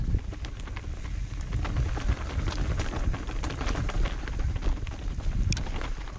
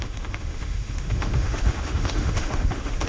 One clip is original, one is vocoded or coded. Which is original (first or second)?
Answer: first